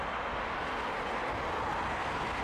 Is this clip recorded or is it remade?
recorded